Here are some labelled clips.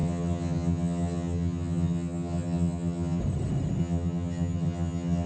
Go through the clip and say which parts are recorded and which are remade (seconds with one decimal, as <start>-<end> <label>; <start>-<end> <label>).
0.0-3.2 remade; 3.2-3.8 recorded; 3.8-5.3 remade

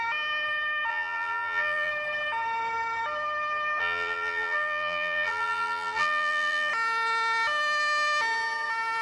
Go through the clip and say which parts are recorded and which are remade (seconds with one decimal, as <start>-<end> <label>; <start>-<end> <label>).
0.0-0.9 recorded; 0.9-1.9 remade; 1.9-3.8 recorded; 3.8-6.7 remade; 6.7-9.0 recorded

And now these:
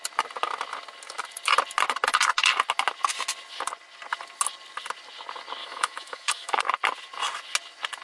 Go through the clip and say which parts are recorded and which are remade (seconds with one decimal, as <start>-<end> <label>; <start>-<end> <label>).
0.0-5.6 recorded; 5.6-6.6 remade; 6.6-8.0 recorded

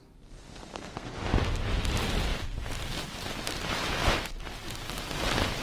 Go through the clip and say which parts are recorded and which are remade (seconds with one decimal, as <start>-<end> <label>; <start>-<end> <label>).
0.0-0.5 recorded; 0.5-1.1 remade; 1.1-5.6 recorded

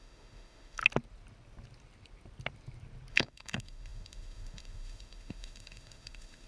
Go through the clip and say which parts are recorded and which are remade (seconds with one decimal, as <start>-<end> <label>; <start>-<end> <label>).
0.0-0.8 remade; 0.8-3.1 recorded; 3.1-6.5 remade